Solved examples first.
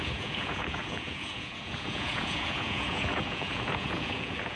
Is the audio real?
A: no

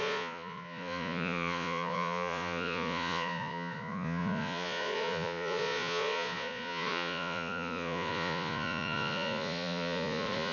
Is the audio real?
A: no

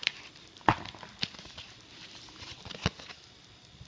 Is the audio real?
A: yes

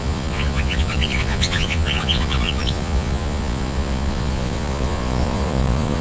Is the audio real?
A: no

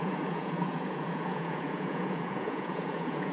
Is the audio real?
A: no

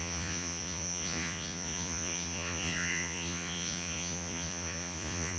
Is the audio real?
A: no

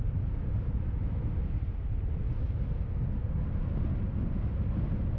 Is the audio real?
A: yes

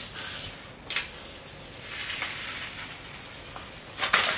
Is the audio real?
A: yes